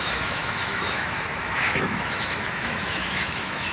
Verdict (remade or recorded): remade